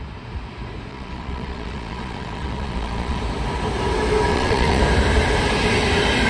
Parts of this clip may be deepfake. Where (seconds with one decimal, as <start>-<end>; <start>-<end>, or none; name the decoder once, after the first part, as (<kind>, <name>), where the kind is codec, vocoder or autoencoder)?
0.9-3.2 (vocoder, Vocos); 4.3-4.8